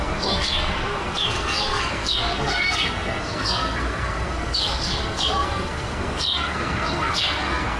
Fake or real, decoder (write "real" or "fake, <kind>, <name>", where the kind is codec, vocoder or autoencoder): fake, codec, SNAC